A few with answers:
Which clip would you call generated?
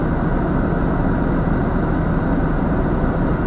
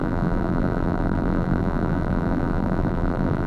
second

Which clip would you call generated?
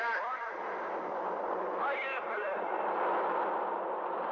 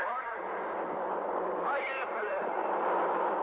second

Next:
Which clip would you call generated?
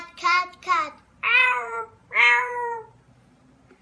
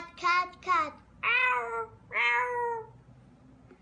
first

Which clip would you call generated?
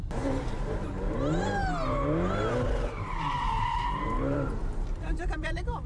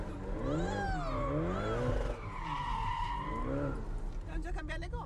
first